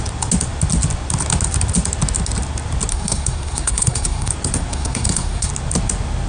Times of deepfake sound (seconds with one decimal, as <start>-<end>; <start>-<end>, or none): 2.9-4.3; 4.7-5.5